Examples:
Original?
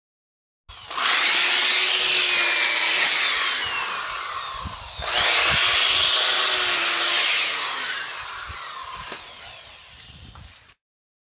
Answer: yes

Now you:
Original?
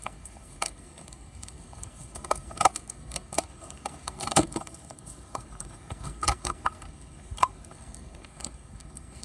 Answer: no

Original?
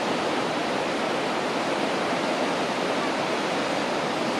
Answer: no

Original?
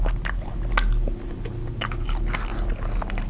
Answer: yes